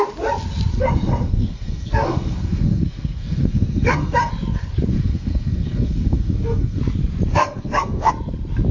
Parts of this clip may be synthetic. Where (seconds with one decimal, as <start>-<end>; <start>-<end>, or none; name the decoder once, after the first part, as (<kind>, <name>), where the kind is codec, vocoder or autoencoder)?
0.7-4.3 (codec, SNAC); 4.9-6.8; 7.3-8.1